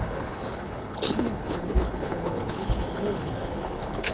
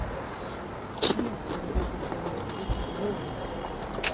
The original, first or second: second